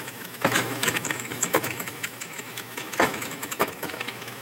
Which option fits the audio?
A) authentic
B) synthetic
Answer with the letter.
B